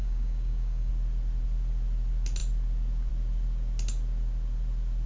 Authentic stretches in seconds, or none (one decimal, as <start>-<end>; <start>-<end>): 0.9-5.1